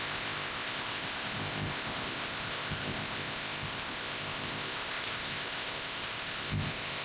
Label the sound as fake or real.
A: fake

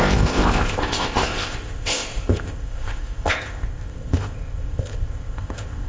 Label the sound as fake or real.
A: fake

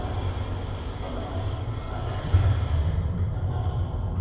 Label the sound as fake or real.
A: real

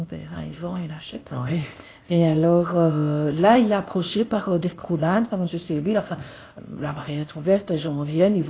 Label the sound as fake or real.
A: fake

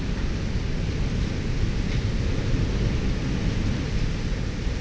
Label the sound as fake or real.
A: real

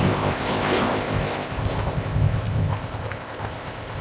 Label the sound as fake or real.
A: fake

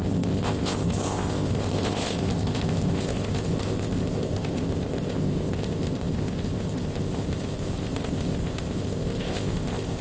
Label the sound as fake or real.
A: fake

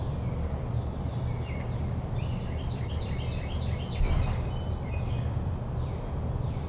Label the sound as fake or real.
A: real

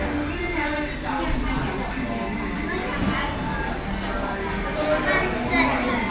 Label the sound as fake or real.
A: real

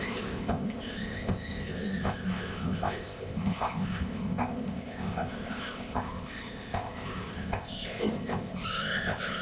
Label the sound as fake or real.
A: fake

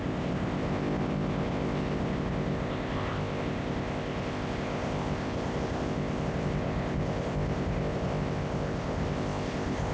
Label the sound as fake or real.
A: fake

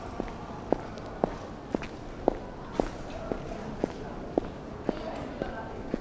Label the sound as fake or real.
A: real